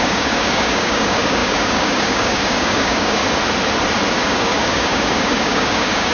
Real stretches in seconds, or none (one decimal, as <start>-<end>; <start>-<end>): 3.2-4.1